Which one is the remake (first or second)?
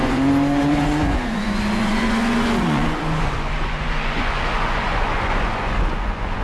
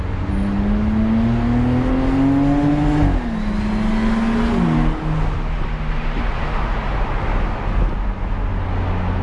first